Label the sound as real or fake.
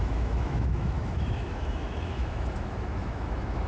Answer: fake